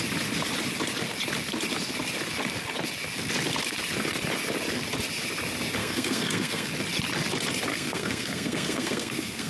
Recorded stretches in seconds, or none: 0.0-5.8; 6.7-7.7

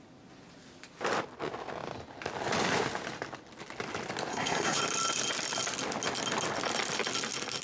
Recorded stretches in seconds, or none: 0.0-4.3; 4.8-7.6